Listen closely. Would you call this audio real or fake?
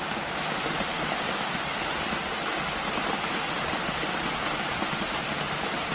real